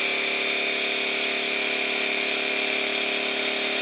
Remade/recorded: recorded